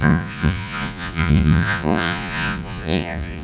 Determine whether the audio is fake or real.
fake